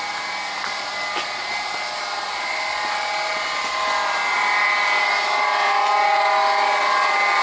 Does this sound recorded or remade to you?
recorded